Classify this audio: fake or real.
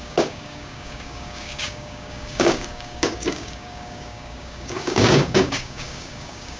fake